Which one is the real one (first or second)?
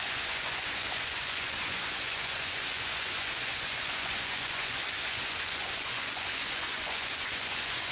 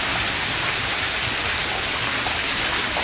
second